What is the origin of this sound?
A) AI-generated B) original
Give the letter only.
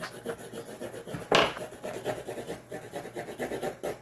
B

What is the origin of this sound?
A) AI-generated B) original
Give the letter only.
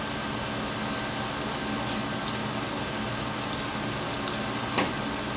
B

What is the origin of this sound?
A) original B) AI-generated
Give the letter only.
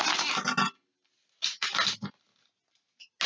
A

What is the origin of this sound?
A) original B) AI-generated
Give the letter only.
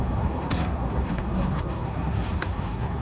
B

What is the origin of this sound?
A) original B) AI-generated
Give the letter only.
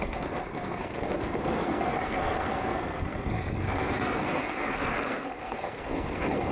B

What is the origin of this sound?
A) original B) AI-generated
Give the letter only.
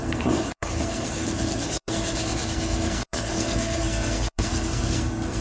B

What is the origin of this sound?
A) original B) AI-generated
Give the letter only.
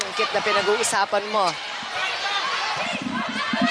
A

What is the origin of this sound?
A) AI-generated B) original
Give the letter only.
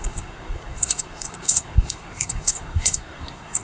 A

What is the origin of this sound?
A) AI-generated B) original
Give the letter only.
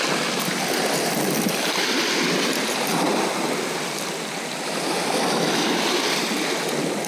B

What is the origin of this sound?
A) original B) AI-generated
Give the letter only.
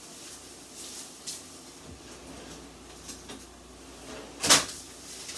A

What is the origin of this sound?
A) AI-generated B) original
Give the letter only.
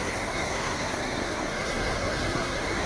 A